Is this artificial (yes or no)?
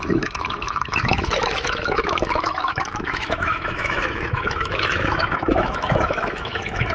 yes